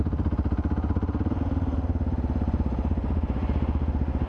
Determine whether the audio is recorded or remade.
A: recorded